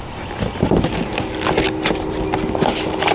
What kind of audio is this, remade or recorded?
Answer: recorded